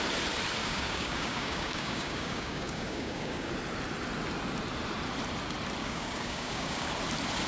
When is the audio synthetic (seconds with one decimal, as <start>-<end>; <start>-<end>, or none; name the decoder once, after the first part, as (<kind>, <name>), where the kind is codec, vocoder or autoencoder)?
0.6-3.5 (codec, DAC); 5.8-6.9